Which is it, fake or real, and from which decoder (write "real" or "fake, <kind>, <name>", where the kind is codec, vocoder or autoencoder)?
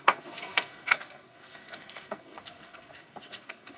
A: fake, codec, SNAC